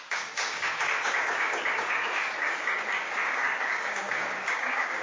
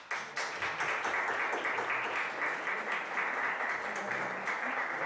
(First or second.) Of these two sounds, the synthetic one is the first